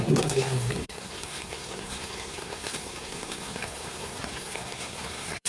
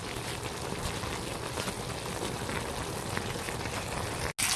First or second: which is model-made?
first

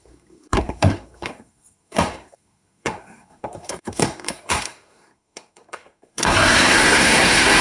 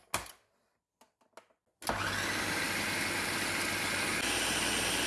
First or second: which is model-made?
first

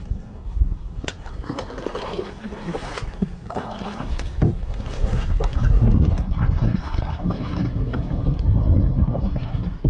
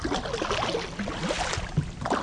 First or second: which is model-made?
first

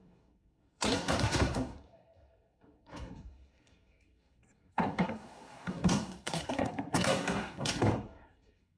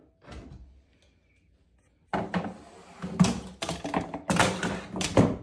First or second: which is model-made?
first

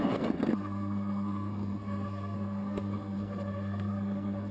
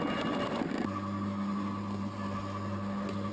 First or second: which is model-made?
first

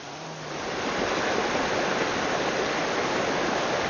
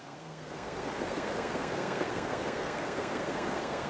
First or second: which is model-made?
second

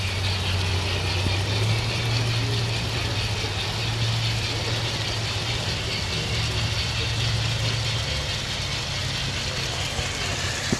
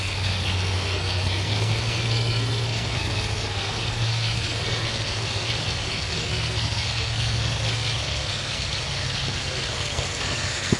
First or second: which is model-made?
second